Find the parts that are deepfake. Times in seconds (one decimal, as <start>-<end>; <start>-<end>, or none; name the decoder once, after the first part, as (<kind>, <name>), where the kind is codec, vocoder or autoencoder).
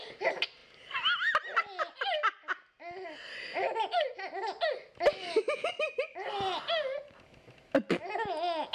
none